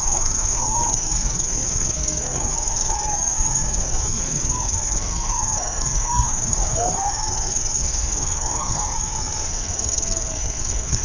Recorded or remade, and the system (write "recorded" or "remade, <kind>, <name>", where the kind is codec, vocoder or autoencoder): remade, codec, SNAC